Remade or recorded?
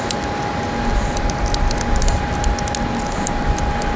recorded